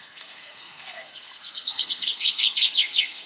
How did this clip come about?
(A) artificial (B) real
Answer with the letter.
A